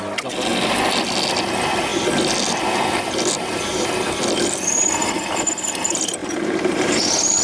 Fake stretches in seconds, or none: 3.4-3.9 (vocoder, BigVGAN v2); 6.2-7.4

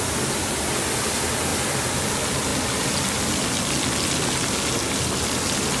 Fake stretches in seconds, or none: none

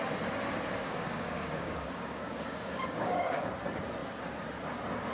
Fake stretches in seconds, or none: 0.8-3.5 (codec, DAC)